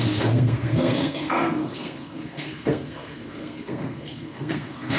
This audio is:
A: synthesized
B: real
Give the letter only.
A